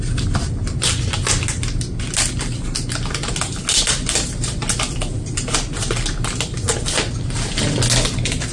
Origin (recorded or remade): recorded